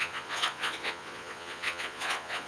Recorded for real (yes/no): no